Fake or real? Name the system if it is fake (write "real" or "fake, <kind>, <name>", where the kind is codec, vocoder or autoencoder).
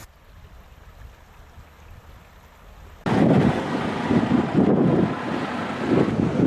real